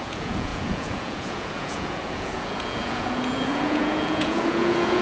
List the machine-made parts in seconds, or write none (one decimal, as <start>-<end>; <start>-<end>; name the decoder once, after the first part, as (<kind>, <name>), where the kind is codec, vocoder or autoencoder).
0.0-5.0 (vocoder, Vocos)